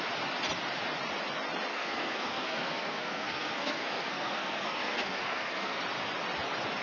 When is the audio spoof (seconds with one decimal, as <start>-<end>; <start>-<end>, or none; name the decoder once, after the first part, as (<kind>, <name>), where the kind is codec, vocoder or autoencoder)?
1.7-5.8 (codec, SNAC)